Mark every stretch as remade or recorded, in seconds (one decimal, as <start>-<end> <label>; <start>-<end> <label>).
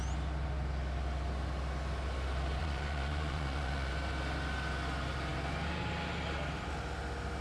0.0-2.6 recorded; 2.6-3.9 remade; 3.9-7.4 recorded